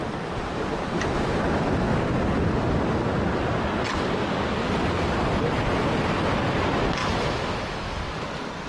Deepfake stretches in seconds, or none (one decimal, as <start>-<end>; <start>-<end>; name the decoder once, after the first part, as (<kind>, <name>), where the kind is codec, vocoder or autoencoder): 7.0-8.0 (autoencoder, DAC-VAE)